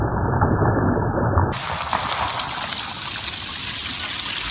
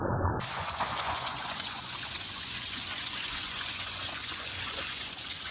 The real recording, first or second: first